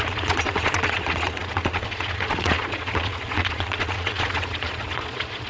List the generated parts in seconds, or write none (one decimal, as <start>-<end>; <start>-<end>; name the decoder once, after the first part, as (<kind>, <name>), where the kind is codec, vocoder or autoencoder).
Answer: 0.0-5.5 (vocoder, Vocos)